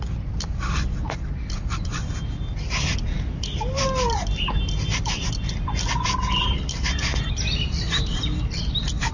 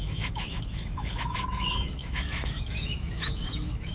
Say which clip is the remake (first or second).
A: second